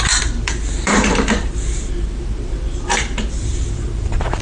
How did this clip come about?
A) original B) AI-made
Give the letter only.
B